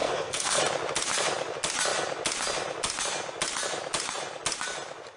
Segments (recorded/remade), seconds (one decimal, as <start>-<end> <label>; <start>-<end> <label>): 0.0-0.6 remade; 0.6-5.2 recorded